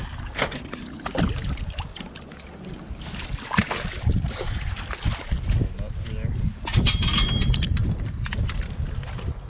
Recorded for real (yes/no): yes